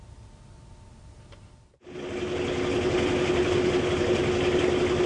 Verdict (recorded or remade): recorded